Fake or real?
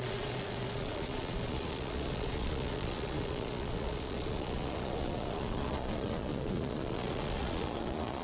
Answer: fake